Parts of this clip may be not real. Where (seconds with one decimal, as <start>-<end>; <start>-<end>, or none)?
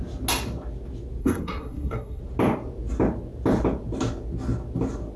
1.2-2.2